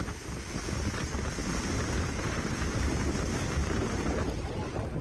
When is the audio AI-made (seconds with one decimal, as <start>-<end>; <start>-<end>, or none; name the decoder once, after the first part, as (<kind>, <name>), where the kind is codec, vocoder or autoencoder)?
1.4-2.5 (vocoder, BigVGAN v2); 3.6-4.5